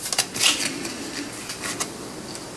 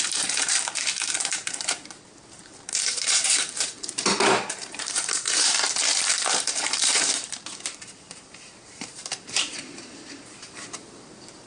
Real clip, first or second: first